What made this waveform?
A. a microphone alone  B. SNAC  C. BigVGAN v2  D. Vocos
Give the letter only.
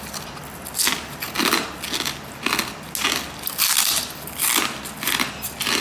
A